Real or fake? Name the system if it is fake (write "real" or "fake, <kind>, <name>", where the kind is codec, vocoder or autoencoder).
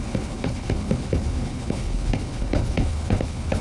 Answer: fake, codec, HILCodec